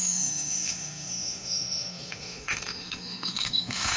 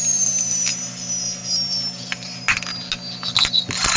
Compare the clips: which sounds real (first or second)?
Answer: second